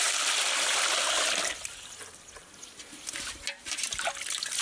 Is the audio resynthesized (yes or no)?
no